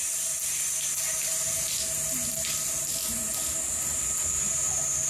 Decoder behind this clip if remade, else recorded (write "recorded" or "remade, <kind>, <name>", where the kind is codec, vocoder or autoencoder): recorded